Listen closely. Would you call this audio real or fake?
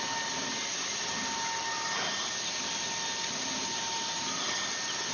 real